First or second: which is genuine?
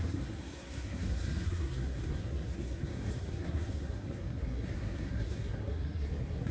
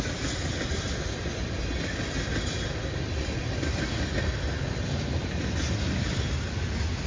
second